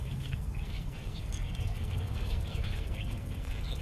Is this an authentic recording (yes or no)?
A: no